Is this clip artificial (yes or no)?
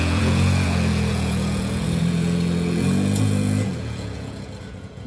yes